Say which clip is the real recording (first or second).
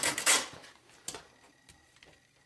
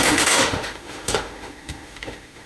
first